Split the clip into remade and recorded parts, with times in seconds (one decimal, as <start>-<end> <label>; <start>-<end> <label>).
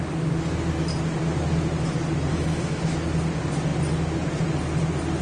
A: 0.0-2.3 recorded; 2.3-2.9 remade; 2.9-5.2 recorded